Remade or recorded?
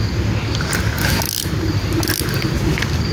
recorded